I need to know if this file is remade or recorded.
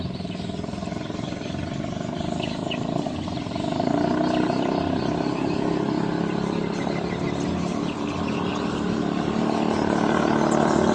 recorded